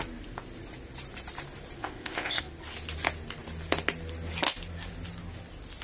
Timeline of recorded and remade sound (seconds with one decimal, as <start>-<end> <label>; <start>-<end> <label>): 0.0-1.8 recorded; 1.8-2.4 remade; 2.4-5.8 recorded